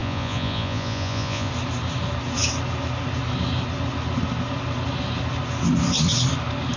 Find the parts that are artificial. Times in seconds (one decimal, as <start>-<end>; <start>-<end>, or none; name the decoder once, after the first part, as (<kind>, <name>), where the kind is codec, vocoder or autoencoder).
0.0-1.5 (vocoder, Vocos)